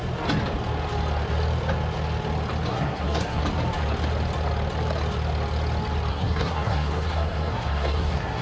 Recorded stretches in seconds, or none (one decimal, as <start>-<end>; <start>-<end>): 0.0-2.7; 3.4-6.1